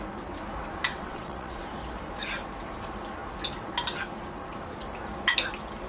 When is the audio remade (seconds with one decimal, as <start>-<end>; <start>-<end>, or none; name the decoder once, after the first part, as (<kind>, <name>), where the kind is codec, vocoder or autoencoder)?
0.9-1.6 (vocoder, WaveNeXt)